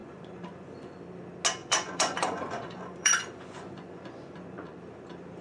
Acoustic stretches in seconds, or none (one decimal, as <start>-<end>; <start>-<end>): 1.0-1.6; 4.8-5.4